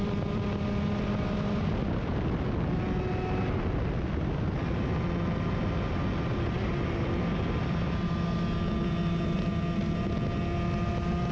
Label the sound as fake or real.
real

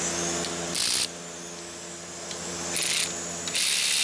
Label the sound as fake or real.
real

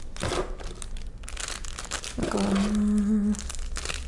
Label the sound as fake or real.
real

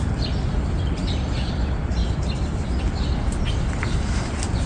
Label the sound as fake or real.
real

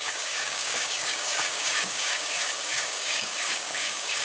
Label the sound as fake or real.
fake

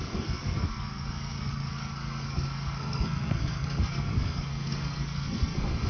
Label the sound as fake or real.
fake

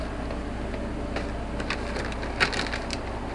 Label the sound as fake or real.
real